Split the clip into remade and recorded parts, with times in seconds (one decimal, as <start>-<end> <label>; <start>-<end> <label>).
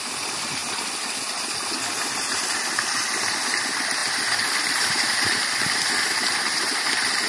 0.0-0.6 remade; 0.6-2.4 recorded; 2.4-4.0 remade; 4.0-4.6 recorded; 4.6-7.3 remade